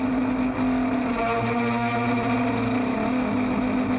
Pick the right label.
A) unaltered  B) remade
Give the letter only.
A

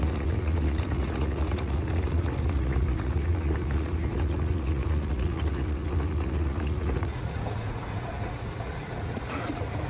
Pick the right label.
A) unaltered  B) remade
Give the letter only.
B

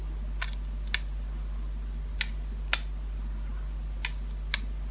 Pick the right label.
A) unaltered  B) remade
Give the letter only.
A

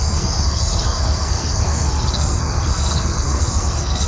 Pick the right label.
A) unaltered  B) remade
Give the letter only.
B